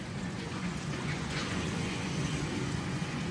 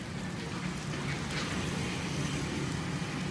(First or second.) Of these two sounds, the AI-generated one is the first